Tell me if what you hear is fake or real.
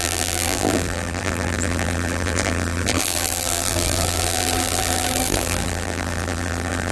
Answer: fake